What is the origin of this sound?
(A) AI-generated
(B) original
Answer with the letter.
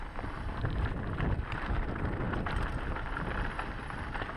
B